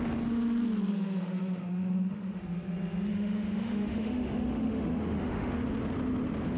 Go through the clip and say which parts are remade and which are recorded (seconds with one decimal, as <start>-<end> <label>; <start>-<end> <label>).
0.0-0.9 recorded; 0.9-2.4 remade; 2.4-3.1 recorded; 3.1-5.5 remade; 5.5-6.6 recorded